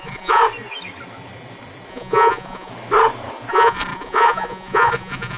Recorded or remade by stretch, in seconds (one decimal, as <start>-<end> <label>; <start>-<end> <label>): 0.0-0.4 remade; 0.4-1.9 recorded; 1.9-2.7 remade; 2.7-3.5 recorded; 3.5-5.4 remade